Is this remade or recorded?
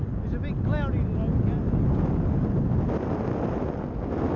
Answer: recorded